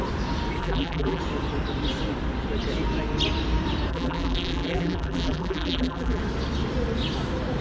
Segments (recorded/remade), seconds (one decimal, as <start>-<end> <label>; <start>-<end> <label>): 0.0-0.6 recorded; 0.6-1.2 remade; 1.2-3.9 recorded; 3.9-6.2 remade; 6.2-7.6 recorded